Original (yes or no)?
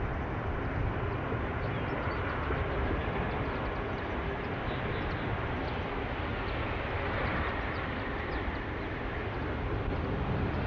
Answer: yes